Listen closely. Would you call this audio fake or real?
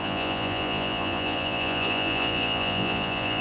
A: fake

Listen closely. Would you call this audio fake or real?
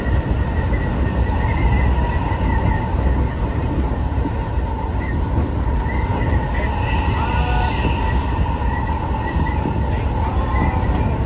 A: real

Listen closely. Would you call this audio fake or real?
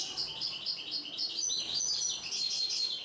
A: real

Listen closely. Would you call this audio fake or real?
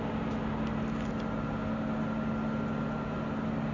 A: real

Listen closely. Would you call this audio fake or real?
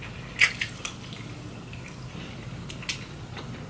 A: real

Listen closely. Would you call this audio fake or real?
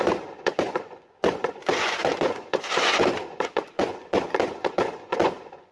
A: fake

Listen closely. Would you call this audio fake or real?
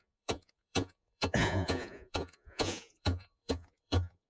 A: fake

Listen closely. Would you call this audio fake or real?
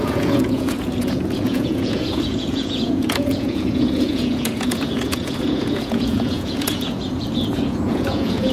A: fake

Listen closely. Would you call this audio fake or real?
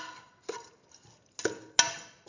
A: real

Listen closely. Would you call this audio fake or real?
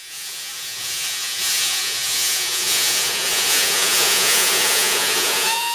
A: fake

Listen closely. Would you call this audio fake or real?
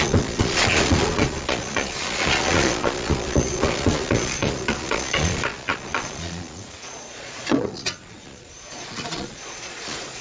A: fake